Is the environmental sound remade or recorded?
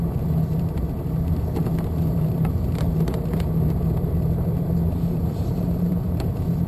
remade